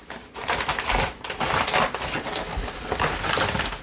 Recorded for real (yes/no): yes